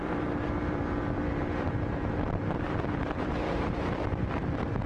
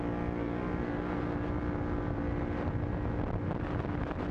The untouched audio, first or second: second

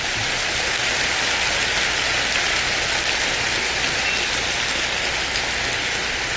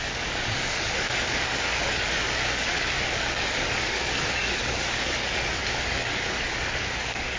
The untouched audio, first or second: first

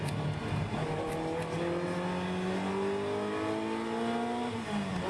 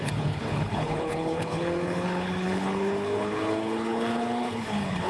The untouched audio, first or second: first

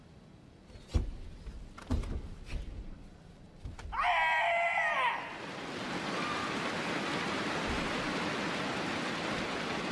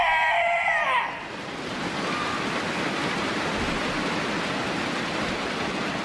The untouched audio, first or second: first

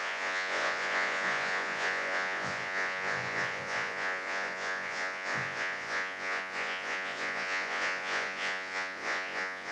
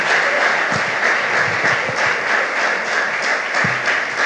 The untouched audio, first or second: second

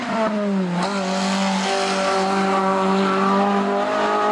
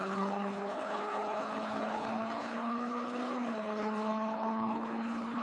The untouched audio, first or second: first